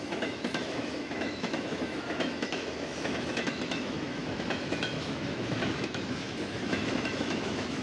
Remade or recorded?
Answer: remade